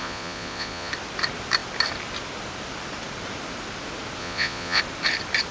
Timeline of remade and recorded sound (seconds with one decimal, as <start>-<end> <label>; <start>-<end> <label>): 0.0-0.9 remade; 0.9-4.2 recorded; 4.2-4.8 remade; 4.8-5.5 recorded